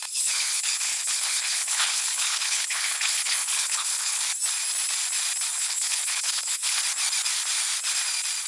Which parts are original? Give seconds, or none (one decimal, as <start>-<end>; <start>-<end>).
4.2-5.6; 6.8-8.5